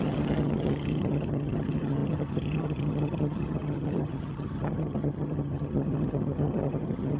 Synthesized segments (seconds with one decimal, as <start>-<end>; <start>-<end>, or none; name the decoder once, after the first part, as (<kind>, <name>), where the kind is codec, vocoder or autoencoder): 0.0-7.2 (vocoder, HiFi-GAN)